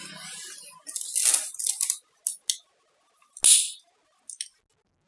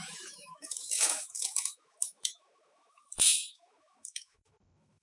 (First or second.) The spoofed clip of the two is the second